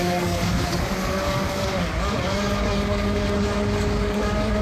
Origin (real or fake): fake